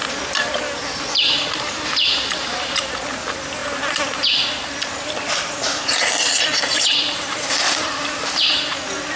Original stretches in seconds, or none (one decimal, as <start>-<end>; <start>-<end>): 3.0-6.7; 8.7-9.2